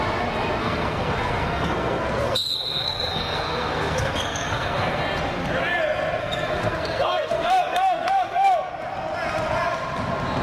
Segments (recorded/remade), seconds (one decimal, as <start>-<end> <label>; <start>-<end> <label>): 0.0-0.6 recorded; 0.6-5.0 remade; 5.0-6.2 recorded; 6.2-8.7 remade; 8.7-10.4 recorded